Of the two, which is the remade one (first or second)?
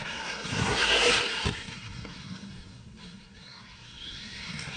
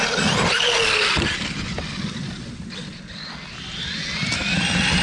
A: first